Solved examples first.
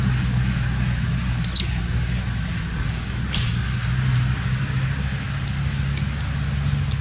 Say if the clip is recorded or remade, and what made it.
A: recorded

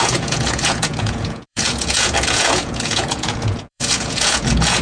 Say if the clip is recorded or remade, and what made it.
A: remade, vocoder, Vocos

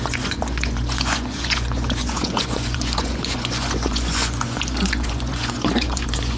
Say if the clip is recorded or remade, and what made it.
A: remade, vocoder, Vocos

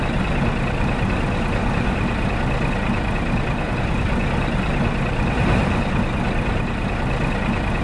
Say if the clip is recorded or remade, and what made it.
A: recorded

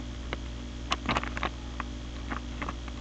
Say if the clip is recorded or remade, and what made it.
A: recorded